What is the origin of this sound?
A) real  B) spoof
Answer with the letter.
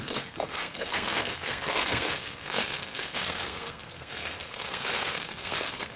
B